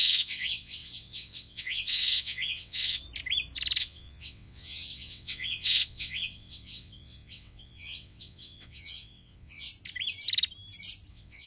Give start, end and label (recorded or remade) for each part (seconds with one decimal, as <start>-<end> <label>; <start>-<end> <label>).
0.0-3.0 remade; 3.0-3.8 recorded; 3.8-9.7 remade; 9.7-11.1 recorded; 11.1-11.5 remade